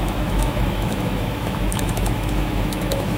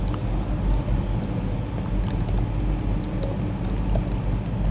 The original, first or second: second